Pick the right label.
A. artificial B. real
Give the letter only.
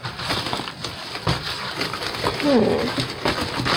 B